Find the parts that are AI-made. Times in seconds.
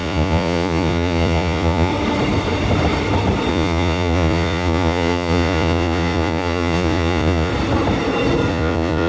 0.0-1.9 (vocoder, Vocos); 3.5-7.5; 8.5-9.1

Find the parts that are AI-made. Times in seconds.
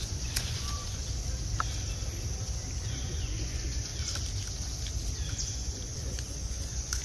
0.0-1.0 (vocoder, Vocos); 2.8-3.9; 5.3-7.0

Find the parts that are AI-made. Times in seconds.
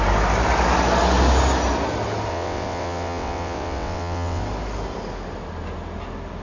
2.3-4.4 (vocoder, WaveNeXt)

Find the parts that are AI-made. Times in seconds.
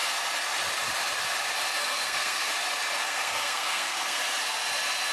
1.8-2.5 (codec, SNAC); 3.0-4.2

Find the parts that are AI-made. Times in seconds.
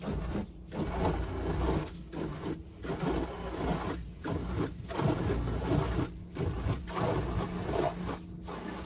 4.4-5.2 (vocoder, BigVGAN v2)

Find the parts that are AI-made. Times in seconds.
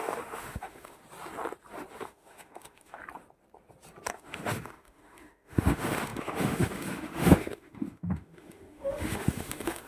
0.0-1.0 (autoencoder, DAC-VAE); 2.0-3.0; 4.1-9.9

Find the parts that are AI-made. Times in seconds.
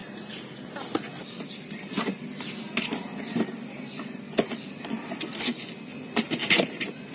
none